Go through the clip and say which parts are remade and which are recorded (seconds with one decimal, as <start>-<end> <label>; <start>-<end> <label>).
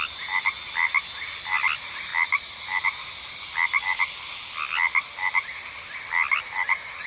0.0-7.1 recorded